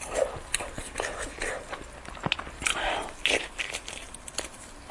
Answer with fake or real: real